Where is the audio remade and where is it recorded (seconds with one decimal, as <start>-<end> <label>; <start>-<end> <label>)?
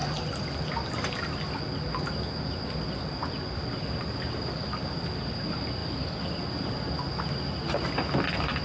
0.0-8.6 recorded